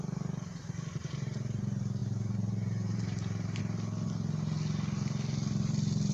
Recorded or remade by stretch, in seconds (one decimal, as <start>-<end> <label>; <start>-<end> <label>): 0.0-1.0 recorded; 1.0-1.6 remade; 1.6-2.0 recorded; 2.0-3.6 remade; 3.6-6.1 recorded